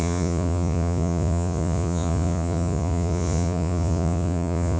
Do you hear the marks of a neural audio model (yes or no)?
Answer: yes